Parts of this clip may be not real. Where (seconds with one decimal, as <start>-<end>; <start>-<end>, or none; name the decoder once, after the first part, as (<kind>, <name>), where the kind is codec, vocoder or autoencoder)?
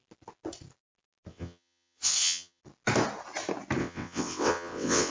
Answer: 1.3-2.6 (vocoder, WaveNeXt); 3.8-5.1